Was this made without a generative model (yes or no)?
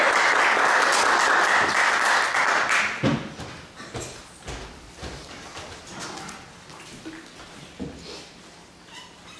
yes